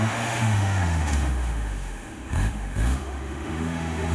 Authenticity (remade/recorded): remade